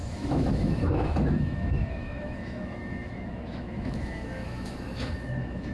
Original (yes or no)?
no